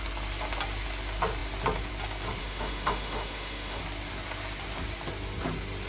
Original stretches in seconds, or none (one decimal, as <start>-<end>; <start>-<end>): 0.0-2.4; 3.8-5.9